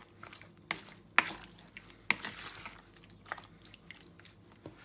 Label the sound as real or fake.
real